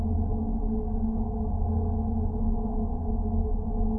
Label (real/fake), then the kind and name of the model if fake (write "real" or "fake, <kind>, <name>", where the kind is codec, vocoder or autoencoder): real